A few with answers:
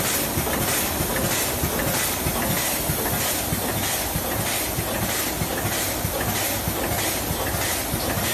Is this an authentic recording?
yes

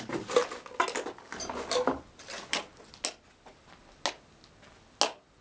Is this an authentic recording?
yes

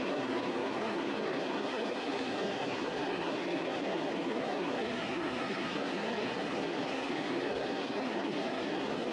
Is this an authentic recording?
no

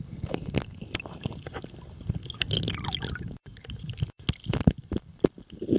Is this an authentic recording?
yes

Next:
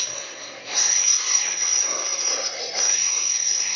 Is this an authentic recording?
no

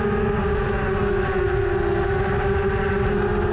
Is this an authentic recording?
yes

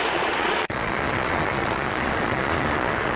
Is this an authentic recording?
no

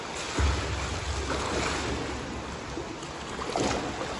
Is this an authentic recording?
yes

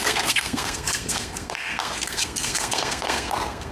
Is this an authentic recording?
no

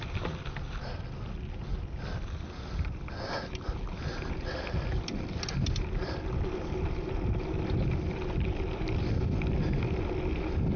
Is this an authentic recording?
yes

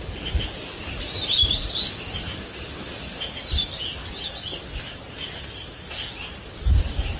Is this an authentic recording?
no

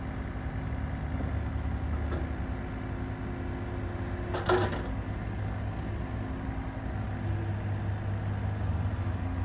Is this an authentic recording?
yes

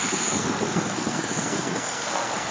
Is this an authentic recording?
no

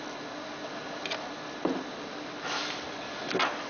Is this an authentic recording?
yes